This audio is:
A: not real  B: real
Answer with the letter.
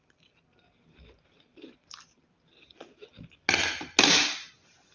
B